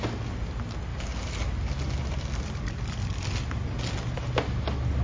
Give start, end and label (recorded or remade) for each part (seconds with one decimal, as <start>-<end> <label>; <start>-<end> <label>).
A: 0.0-5.0 recorded